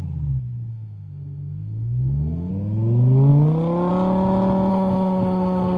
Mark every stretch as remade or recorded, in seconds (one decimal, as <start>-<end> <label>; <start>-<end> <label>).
0.0-0.7 recorded; 0.7-2.5 remade; 2.5-4.7 recorded; 4.7-5.8 remade